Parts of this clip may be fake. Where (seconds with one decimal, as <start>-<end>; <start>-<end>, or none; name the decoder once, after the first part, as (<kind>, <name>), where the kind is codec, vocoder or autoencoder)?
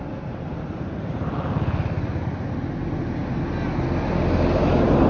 none